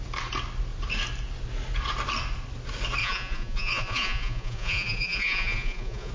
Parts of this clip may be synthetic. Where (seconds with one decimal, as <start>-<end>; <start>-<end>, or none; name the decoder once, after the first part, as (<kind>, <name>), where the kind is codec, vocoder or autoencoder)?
3.0-6.1 (vocoder, Vocos)